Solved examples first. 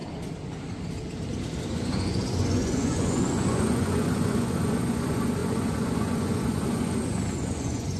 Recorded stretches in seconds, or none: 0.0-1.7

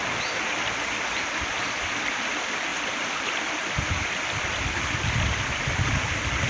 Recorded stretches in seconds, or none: 0.0-6.5

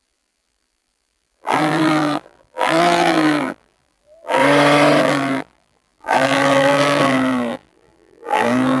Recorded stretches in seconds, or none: 4.4-5.0

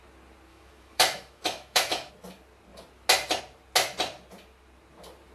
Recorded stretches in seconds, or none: 0.0-0.5; 2.1-5.3

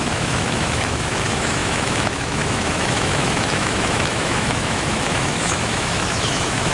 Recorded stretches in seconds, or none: none

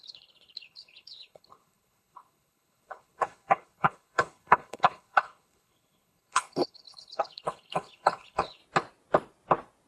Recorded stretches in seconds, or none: 8.6-9.9

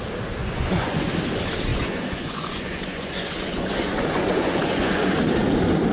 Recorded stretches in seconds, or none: 0.0-0.4; 1.1-1.7; 5.2-5.9